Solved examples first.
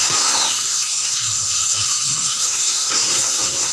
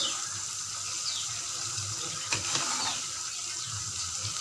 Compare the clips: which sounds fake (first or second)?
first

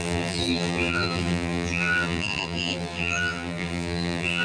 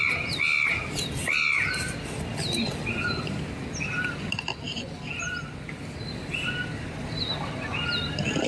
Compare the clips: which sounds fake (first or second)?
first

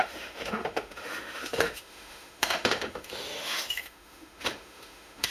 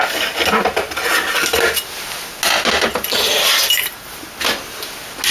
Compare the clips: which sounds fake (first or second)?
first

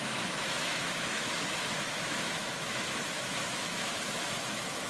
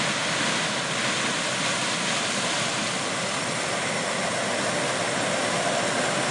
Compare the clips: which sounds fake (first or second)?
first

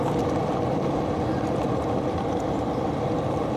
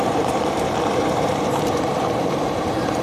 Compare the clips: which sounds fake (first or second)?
second